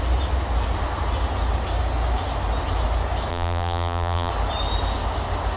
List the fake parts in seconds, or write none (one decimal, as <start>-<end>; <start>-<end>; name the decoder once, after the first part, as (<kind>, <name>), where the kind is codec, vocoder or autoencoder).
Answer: 3.3-4.3 (vocoder, BigVGAN v2)